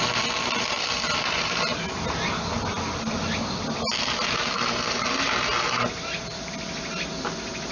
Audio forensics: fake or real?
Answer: real